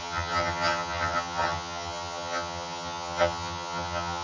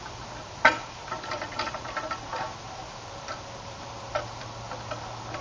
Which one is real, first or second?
second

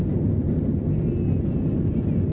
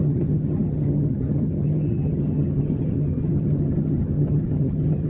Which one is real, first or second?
first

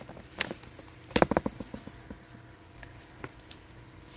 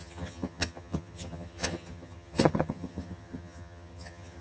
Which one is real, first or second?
first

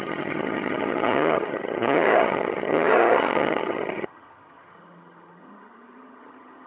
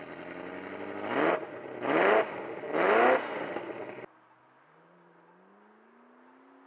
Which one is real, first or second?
second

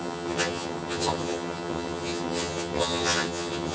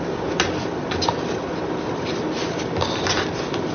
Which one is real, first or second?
second